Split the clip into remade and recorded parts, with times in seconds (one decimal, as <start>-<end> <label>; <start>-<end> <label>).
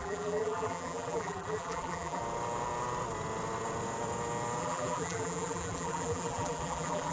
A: 0.0-2.2 remade; 2.2-4.6 recorded; 4.6-7.1 remade